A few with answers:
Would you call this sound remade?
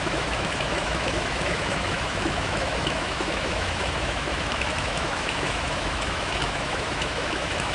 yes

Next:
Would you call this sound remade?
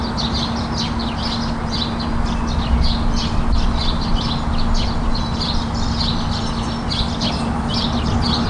no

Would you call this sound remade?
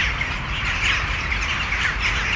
no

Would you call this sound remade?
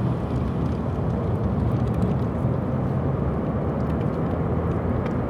no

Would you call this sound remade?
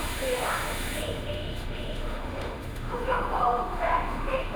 yes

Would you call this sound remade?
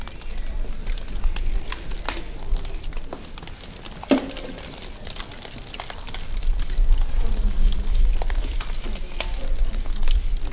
no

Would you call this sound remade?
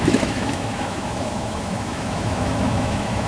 yes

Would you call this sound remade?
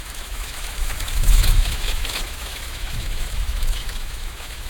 yes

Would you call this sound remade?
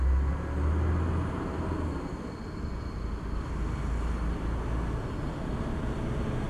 no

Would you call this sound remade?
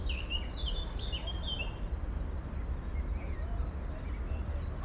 no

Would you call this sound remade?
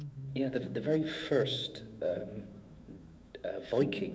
yes